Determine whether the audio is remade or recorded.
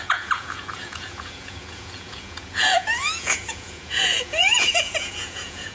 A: remade